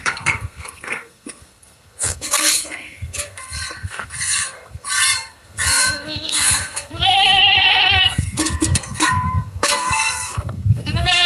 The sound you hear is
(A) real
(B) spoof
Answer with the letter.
B